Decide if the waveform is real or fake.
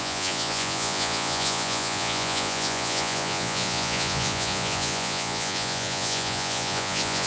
fake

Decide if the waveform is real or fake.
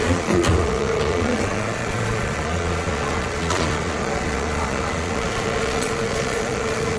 fake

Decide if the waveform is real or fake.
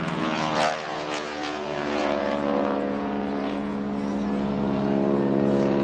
fake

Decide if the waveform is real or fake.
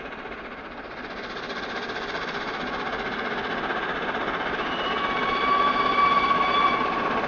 real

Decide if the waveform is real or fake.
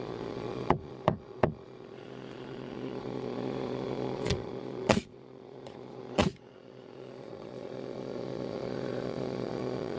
fake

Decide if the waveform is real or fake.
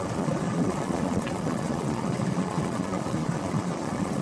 fake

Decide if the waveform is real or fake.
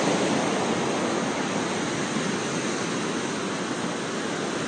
real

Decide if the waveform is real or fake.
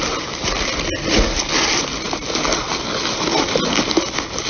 real